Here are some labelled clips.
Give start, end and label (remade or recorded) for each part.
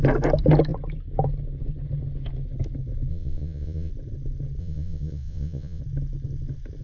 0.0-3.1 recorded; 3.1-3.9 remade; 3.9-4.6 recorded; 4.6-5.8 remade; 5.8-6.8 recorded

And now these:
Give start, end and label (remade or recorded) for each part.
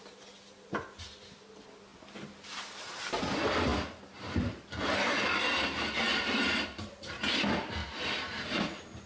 0.0-9.1 recorded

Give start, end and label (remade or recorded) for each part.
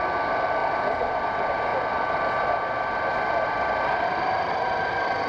0.0-5.3 recorded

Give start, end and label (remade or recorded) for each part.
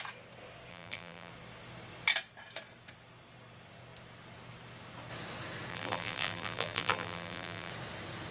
0.0-0.7 recorded; 0.7-1.3 remade; 1.3-5.7 recorded; 5.7-7.7 remade; 7.7-8.3 recorded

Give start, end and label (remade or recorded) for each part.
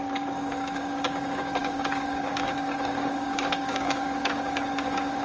0.0-5.2 remade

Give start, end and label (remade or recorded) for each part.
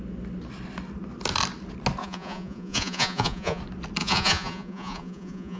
0.0-2.0 recorded; 2.0-3.6 remade; 3.6-4.0 recorded; 4.0-5.6 remade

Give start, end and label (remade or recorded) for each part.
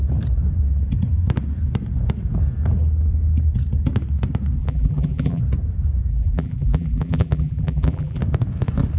0.0-4.6 recorded; 4.6-5.4 remade; 5.4-6.1 recorded; 6.1-8.2 remade; 8.2-9.0 recorded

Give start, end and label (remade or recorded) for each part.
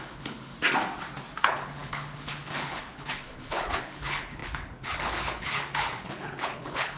0.0-0.5 remade; 0.5-1.4 recorded; 1.4-7.0 remade